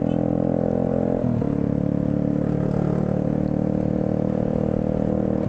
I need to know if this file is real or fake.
real